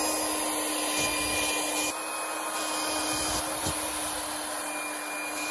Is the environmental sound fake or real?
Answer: real